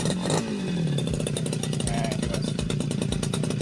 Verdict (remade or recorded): remade